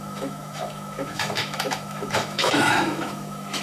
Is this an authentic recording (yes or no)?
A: no